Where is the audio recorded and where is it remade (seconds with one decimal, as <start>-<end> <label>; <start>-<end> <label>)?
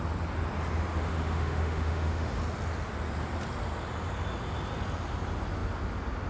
0.0-1.0 recorded; 1.0-2.4 remade; 2.4-6.3 recorded